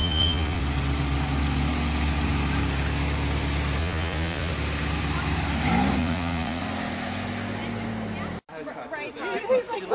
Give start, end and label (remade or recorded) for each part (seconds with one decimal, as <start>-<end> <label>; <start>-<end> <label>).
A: 0.0-0.6 remade; 0.6-3.8 recorded; 3.8-4.5 remade; 4.5-6.0 recorded; 6.0-6.6 remade; 6.6-9.9 recorded